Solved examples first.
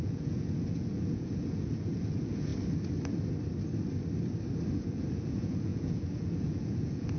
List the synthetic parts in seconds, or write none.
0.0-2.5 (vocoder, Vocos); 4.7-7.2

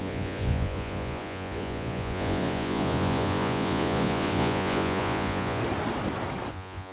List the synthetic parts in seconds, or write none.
0.0-5.6 (vocoder, Vocos); 6.5-6.9

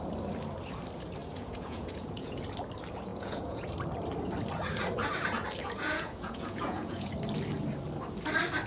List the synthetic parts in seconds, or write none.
1.2-2.4 (vocoder, Vocos); 3.1-3.7; 5.6-7.1

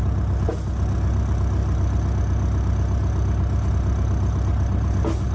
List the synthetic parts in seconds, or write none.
none

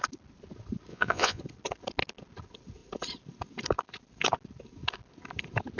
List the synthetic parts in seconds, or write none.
0.9-1.4 (vocoder, Vocos)